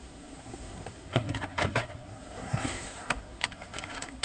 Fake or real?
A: fake